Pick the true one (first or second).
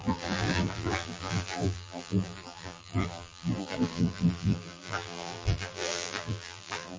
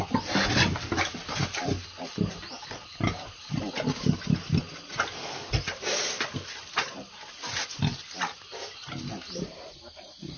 second